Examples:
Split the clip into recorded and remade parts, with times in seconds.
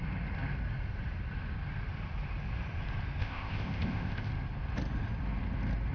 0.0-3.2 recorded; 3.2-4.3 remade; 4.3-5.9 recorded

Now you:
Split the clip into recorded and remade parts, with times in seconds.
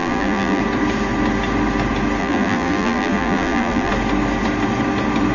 0.0-0.6 remade; 0.6-2.2 recorded; 2.2-3.9 remade; 3.9-5.3 recorded